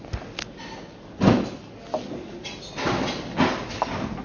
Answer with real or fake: real